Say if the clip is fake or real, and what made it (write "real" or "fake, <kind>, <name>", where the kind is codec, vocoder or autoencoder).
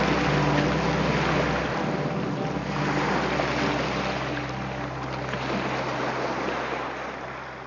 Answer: real